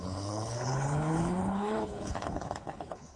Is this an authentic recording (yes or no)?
no